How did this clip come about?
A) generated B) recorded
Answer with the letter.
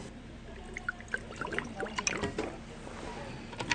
B